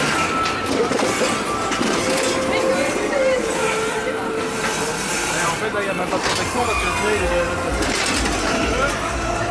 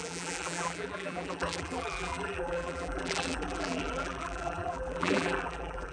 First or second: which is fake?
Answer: second